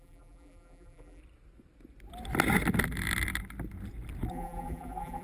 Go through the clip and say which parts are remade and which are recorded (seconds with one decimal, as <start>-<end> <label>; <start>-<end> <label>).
0.0-1.2 remade; 1.2-4.3 recorded; 4.3-5.2 remade